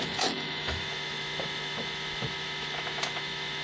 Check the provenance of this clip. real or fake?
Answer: fake